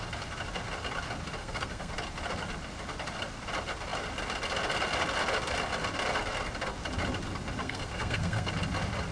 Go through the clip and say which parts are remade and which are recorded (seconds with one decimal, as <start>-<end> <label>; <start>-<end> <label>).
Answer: 0.0-1.4 recorded; 1.4-1.9 remade; 1.9-7.6 recorded; 7.6-8.5 remade; 8.5-9.1 recorded